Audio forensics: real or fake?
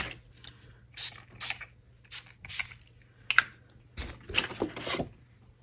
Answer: real